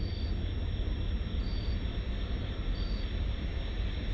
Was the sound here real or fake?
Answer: real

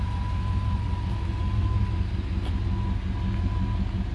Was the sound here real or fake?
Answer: real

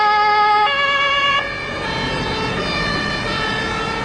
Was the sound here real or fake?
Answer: real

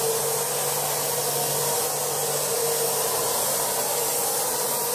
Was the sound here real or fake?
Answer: real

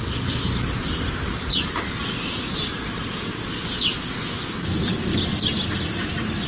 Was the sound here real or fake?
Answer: real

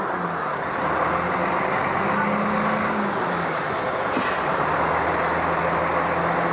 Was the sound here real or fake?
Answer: real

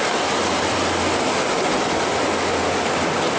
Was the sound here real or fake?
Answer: real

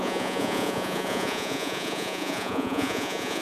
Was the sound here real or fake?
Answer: fake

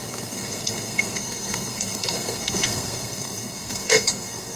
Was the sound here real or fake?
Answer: fake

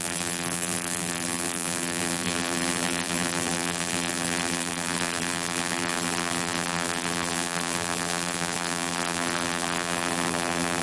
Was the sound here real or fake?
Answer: fake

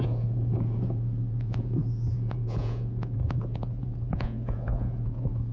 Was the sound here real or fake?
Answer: fake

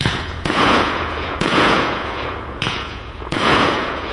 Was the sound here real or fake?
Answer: fake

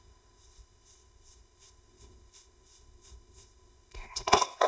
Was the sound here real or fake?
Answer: fake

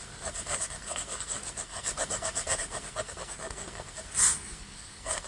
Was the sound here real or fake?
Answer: fake